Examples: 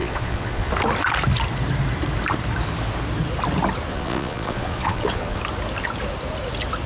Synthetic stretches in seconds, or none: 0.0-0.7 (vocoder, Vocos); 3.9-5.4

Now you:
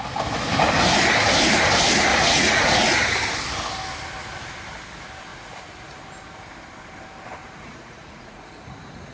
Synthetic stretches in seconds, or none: 2.1-2.6 (vocoder, Vocos); 5.3-6.0; 7.4-9.1

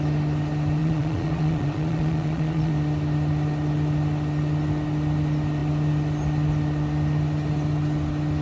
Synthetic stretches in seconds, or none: 0.8-2.7 (vocoder, Vocos)

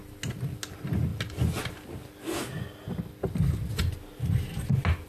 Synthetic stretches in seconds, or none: none

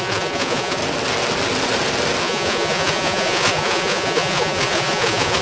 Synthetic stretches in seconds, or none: 0.0-0.8 (vocoder, Vocos); 2.2-5.4